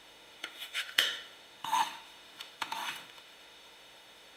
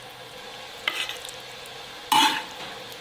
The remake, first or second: first